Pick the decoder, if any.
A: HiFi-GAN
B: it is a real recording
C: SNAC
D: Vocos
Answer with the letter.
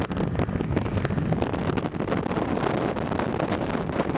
B